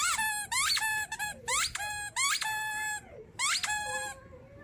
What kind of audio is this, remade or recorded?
recorded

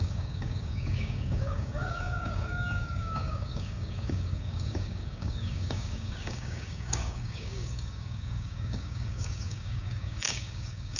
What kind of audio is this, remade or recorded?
remade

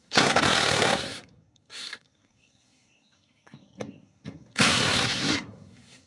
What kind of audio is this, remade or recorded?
remade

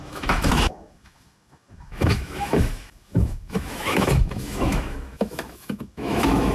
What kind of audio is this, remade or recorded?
remade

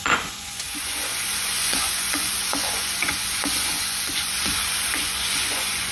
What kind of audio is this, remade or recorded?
remade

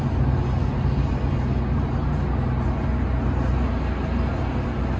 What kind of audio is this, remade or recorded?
recorded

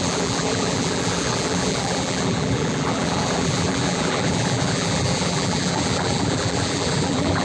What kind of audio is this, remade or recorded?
remade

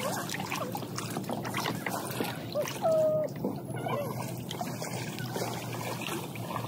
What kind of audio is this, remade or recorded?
recorded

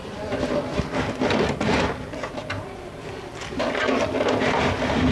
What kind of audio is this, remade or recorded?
recorded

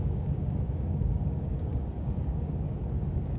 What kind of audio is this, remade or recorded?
remade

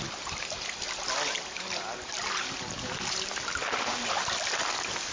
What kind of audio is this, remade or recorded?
recorded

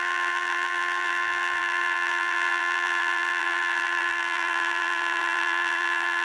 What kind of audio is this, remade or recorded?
remade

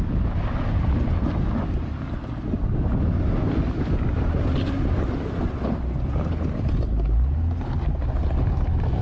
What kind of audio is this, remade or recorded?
recorded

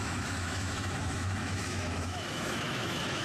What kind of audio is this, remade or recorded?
remade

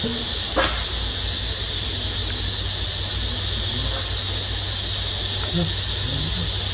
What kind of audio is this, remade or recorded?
recorded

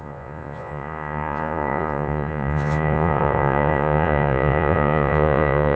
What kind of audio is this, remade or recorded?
remade